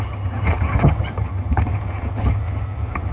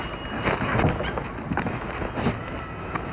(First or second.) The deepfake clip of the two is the first